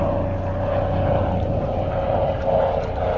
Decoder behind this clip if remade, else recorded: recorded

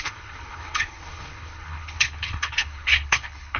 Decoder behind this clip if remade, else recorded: remade, codec, HILCodec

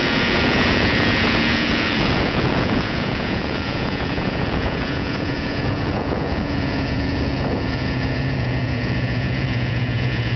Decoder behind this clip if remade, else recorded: remade, vocoder, Vocos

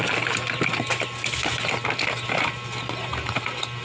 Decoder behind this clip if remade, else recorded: recorded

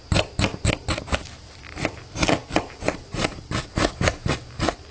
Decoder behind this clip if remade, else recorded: recorded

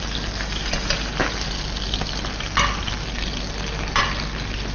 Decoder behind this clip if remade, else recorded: recorded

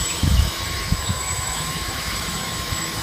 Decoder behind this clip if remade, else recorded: remade, autoencoder, DAC-VAE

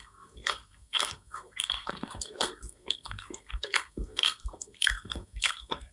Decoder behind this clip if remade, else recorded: remade, codec, SNAC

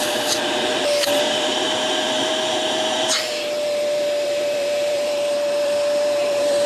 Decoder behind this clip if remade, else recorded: remade, vocoder, BigVGAN v2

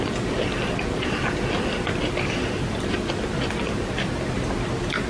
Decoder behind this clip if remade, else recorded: recorded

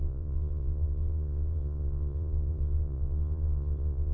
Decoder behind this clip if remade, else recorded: remade, vocoder, Vocos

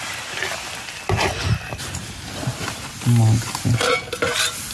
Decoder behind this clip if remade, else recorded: recorded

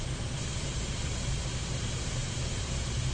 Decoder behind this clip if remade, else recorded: remade, vocoder, BigVGAN v2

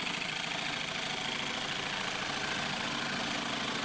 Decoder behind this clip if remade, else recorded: recorded